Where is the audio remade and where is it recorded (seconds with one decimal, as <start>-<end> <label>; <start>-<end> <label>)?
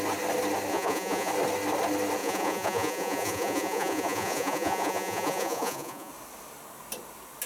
0.0-0.7 recorded; 0.7-1.3 remade; 1.3-2.2 recorded; 2.2-6.1 remade; 6.1-7.5 recorded